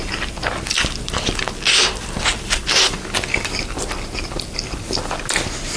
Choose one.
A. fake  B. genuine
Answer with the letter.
B